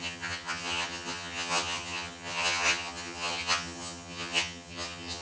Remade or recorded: remade